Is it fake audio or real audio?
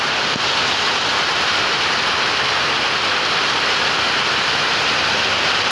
real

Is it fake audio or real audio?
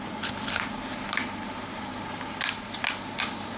real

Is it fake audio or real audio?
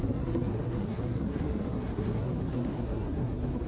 fake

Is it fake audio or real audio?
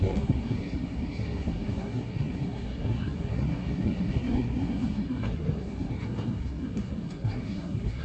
fake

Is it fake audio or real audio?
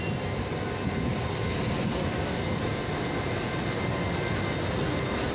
real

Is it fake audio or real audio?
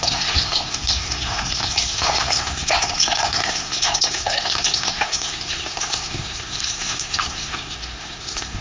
fake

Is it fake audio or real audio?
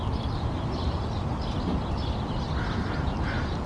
real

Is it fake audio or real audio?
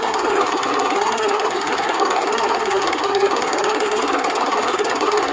fake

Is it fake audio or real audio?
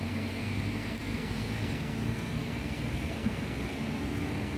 fake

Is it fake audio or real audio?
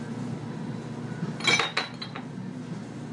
real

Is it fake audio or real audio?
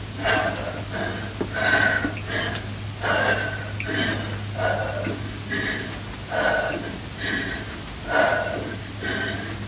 real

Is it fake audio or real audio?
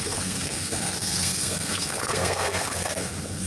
fake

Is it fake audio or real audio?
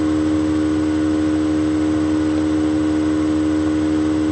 real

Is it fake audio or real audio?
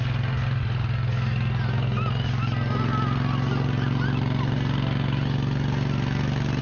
real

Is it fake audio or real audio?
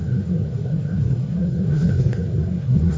fake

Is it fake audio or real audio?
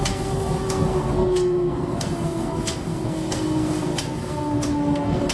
fake